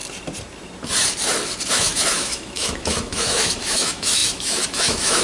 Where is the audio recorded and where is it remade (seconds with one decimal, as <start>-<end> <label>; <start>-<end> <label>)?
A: 0.0-1.7 recorded; 1.7-5.2 remade